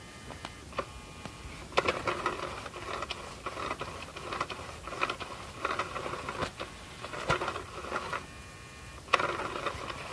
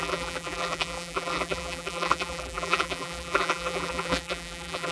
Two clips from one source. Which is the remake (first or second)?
second